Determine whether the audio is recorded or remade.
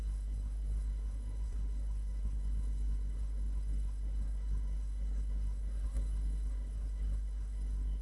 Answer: remade